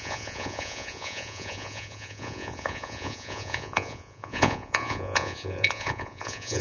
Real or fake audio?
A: fake